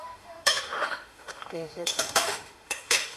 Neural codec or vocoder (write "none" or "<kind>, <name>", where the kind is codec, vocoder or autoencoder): autoencoder, DAC-VAE